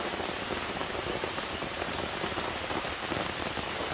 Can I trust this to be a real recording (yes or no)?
no